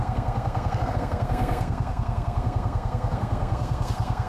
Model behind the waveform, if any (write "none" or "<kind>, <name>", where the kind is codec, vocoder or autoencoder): codec, SNAC